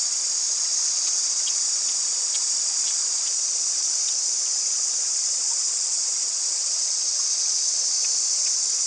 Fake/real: fake